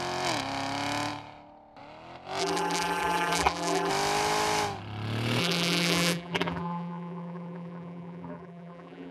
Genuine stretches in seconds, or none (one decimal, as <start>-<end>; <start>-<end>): 0.0-2.4; 3.9-5.4